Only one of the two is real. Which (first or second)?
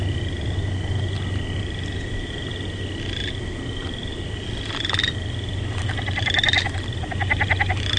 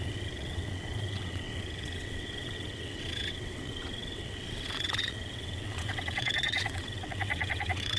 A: first